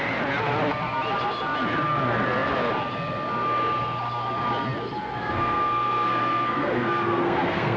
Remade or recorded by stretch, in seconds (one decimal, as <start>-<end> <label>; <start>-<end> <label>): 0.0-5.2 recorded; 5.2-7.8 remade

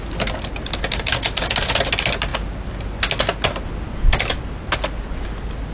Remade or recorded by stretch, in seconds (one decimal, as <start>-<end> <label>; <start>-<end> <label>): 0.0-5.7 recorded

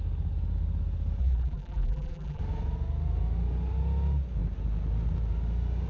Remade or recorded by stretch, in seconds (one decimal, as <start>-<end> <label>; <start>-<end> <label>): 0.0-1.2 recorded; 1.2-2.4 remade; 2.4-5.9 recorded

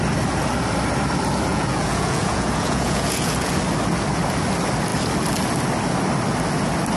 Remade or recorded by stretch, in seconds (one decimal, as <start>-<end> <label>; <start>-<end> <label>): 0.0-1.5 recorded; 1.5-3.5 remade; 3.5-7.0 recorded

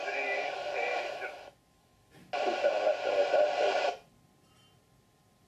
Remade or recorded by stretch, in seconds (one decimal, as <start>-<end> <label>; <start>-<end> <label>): 0.0-0.9 remade; 0.9-1.7 recorded; 1.7-2.2 remade; 2.2-5.5 recorded

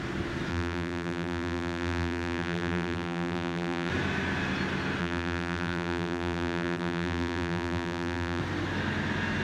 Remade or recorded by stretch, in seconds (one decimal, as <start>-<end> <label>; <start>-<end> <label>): 0.0-0.5 recorded; 0.5-3.9 remade; 3.9-5.0 recorded; 5.0-8.4 remade; 8.4-9.4 recorded

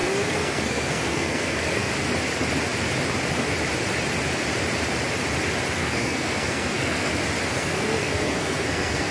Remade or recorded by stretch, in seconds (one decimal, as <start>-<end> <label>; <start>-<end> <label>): 0.0-1.9 remade; 1.9-5.8 recorded; 5.8-7.1 remade; 7.1-7.5 recorded; 7.5-9.1 remade